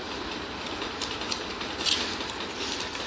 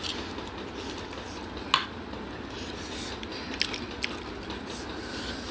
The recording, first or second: second